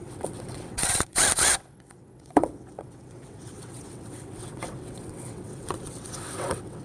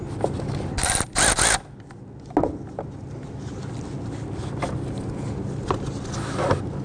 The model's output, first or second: first